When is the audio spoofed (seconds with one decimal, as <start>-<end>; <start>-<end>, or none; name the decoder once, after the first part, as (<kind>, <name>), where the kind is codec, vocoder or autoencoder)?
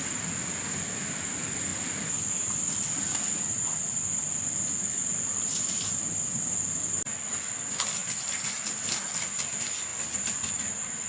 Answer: none